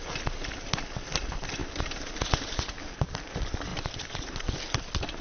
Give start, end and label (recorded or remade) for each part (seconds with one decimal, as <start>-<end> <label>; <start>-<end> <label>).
0.0-1.6 recorded; 1.6-2.1 remade; 2.1-5.2 recorded

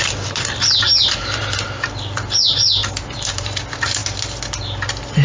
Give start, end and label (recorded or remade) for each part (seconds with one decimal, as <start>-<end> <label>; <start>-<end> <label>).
0.0-0.9 recorded; 0.9-1.9 remade; 1.9-2.8 recorded; 2.8-3.6 remade; 3.6-5.2 recorded